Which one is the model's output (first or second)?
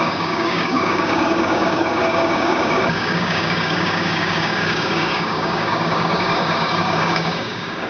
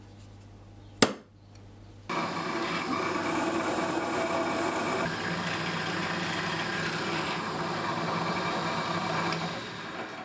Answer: first